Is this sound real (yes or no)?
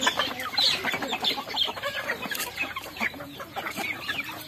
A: yes